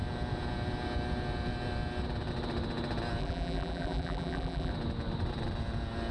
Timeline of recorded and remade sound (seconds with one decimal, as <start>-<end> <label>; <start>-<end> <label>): 0.0-3.2 recorded; 3.2-4.7 remade; 4.7-6.1 recorded

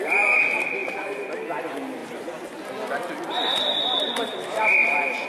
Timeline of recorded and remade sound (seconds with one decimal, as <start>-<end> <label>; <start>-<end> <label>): 0.0-5.3 recorded

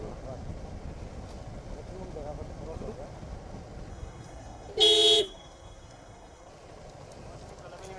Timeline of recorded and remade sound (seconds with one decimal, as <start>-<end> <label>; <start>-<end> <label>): 0.0-3.9 recorded; 3.9-4.7 remade; 4.7-5.2 recorded; 5.2-6.5 remade; 6.5-8.0 recorded

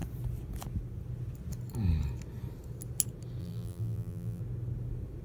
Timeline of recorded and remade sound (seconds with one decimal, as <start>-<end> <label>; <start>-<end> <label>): 0.0-3.4 recorded; 3.4-4.4 remade; 4.4-5.2 recorded